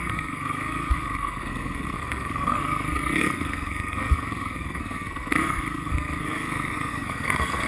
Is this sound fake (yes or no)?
yes